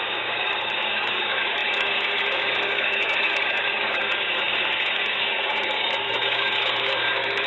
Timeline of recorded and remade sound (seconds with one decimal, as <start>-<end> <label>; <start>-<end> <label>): 0.0-7.5 remade